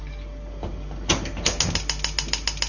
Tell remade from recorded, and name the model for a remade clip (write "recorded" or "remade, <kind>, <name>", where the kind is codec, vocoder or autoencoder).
recorded